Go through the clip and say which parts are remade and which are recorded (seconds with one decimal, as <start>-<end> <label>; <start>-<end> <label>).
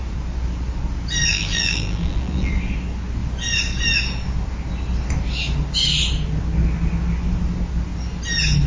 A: 0.0-1.3 recorded; 1.3-2.5 remade; 2.5-8.7 recorded